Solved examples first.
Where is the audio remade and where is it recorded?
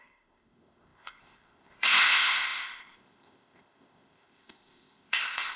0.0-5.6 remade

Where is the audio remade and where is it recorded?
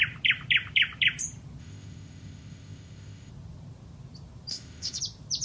0.0-1.6 recorded; 1.6-3.3 remade; 3.3-4.5 recorded; 4.5-5.0 remade; 5.0-5.4 recorded